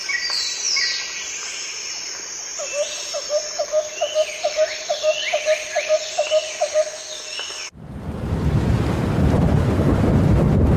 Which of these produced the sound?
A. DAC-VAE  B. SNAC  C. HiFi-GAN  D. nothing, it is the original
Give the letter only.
D